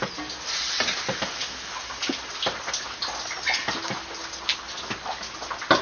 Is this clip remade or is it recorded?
recorded